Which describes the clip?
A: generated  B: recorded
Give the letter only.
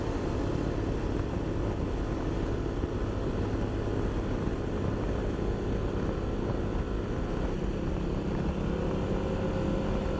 B